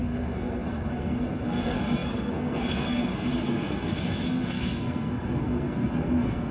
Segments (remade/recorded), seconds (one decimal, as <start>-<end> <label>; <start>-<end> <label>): 0.0-6.5 remade